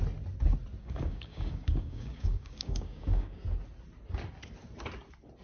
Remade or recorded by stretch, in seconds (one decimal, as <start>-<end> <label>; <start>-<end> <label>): 0.0-0.8 recorded; 0.8-3.4 remade; 3.4-5.4 recorded